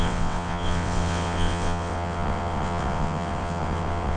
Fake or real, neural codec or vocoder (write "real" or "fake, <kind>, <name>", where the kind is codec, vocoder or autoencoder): fake, vocoder, WaveNeXt